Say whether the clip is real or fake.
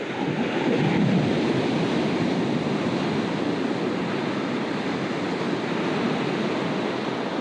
real